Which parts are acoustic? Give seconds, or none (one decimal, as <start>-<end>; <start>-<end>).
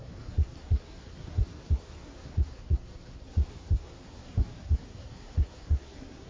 none